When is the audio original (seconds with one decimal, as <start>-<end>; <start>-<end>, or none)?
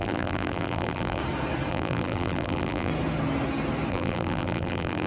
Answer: 1.2-1.7; 2.9-3.9